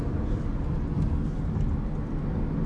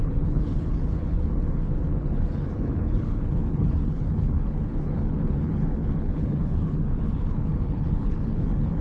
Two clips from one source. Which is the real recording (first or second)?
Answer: first